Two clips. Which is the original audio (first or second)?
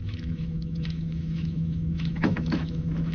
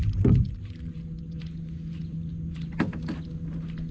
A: second